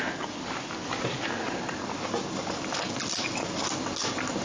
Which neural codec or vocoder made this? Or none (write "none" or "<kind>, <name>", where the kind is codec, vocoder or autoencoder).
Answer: none